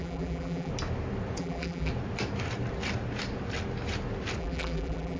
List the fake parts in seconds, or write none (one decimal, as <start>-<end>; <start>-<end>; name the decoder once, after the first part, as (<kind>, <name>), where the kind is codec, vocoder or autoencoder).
0.0-0.7 (vocoder, BigVGAN v2); 1.4-1.9; 4.4-5.2